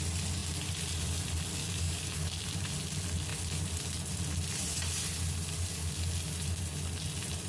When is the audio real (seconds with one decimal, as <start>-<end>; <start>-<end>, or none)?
0.0-1.6; 2.4-7.5